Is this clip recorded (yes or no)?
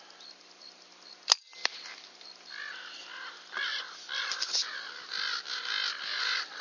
yes